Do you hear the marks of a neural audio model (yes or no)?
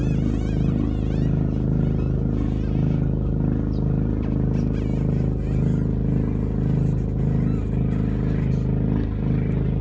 no